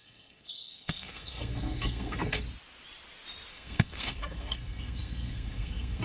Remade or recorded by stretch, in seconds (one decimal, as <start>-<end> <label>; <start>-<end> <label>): 0.0-2.4 remade; 2.4-3.5 recorded; 3.5-6.0 remade